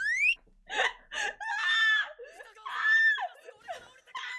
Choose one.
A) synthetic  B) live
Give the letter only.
A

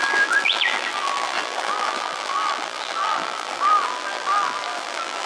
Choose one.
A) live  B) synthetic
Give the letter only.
B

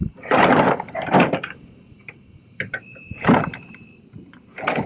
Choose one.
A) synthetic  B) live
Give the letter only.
A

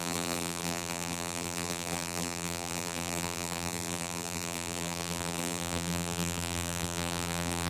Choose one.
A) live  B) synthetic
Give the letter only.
B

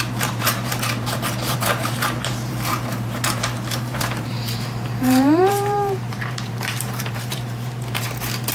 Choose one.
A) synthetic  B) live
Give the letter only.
A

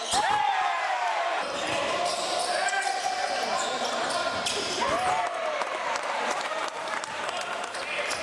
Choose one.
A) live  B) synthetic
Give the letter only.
B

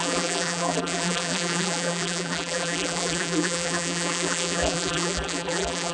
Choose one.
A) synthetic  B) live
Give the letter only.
A